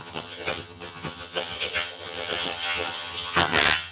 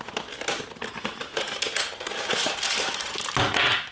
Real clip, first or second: second